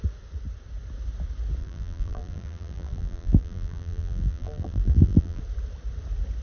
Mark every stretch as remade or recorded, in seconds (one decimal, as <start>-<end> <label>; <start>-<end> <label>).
0.0-1.6 recorded; 1.6-5.4 remade; 5.4-6.4 recorded

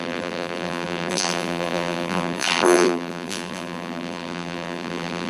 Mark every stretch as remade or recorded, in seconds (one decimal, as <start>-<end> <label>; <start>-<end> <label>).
0.0-5.3 remade

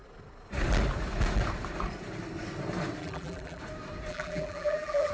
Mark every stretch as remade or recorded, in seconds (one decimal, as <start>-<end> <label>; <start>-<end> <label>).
0.0-3.0 recorded; 3.0-3.6 remade; 3.6-4.1 recorded; 4.1-5.1 remade

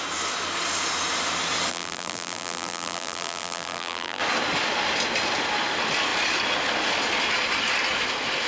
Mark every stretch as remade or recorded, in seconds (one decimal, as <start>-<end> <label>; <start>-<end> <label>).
0.0-1.7 recorded; 1.7-4.2 remade; 4.2-8.5 recorded

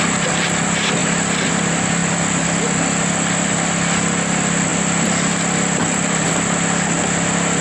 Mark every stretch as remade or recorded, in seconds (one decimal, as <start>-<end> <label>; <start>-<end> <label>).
0.0-1.0 recorded; 1.0-1.5 remade; 1.5-4.7 recorded; 4.7-6.3 remade; 6.3-7.6 recorded

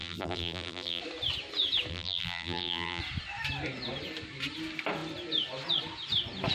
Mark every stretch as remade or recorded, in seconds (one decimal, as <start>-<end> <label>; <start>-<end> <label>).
0.0-1.0 remade; 1.0-1.9 recorded; 1.9-3.0 remade; 3.0-6.5 recorded

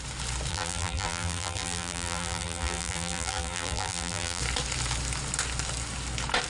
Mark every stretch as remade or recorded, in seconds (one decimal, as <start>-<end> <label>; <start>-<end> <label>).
0.0-0.5 recorded; 0.5-4.4 remade; 4.4-6.5 recorded

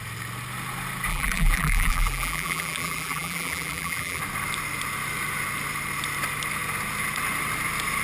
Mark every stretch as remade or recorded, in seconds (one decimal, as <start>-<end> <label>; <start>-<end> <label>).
0.0-1.1 recorded; 1.1-4.2 remade; 4.2-8.0 recorded